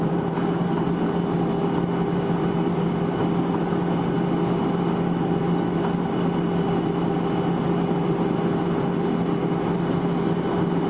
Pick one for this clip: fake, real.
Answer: real